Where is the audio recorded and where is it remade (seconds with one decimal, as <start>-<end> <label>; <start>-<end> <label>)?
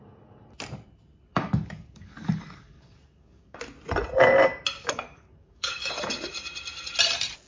0.0-1.3 recorded; 1.3-3.6 remade; 3.6-4.8 recorded; 4.8-5.9 remade; 5.9-7.5 recorded